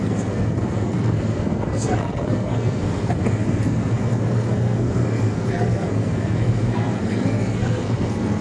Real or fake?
fake